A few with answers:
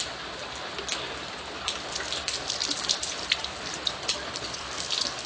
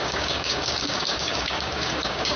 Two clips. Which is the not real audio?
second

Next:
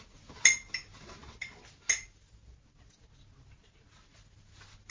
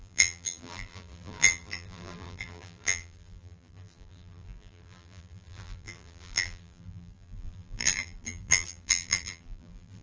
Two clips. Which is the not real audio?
second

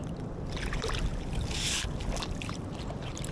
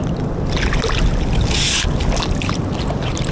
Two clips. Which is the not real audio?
first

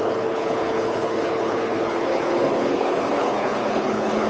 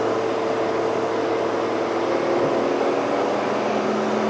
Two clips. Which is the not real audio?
first